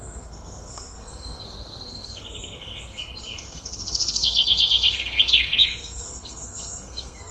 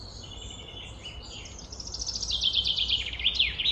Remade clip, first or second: first